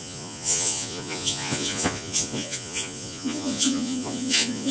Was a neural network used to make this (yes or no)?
yes